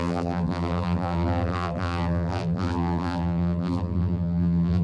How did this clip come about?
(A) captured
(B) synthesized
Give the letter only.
B